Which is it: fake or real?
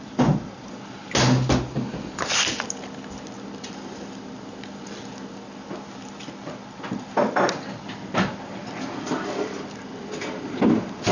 real